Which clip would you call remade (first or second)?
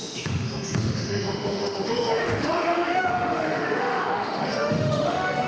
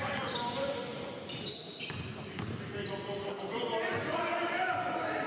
first